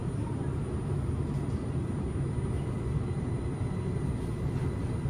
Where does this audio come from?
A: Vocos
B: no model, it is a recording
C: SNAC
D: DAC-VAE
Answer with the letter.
B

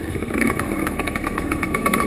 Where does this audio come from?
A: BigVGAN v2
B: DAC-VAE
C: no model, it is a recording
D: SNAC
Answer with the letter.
D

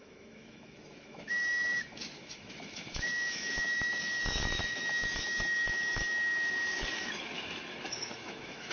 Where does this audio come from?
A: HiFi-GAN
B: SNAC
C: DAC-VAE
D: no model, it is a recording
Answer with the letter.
C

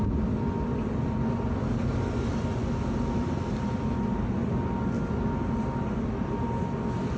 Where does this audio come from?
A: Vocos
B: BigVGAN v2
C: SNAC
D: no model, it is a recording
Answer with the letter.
D